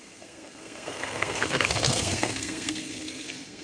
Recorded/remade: remade